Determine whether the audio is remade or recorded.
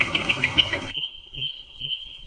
remade